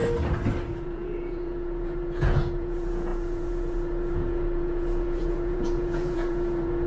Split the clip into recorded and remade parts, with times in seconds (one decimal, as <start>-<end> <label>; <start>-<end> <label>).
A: 0.0-0.7 recorded; 0.7-6.9 remade